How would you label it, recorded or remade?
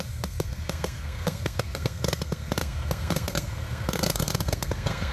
remade